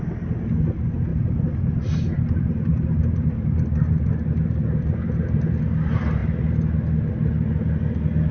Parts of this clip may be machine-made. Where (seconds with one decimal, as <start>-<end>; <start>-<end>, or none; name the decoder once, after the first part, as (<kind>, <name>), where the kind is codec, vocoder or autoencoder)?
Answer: 1.1-5.6 (vocoder, BigVGAN v2)